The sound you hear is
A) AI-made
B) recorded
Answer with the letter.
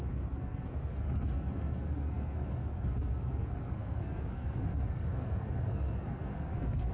A